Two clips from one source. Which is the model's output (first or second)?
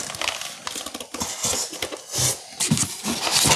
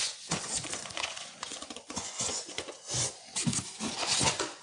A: second